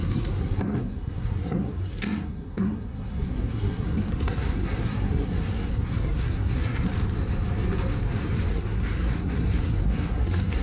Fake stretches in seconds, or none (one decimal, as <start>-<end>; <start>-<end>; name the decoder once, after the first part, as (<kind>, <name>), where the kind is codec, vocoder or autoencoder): 0.0-6.9 (codec, SNAC); 8.5-10.6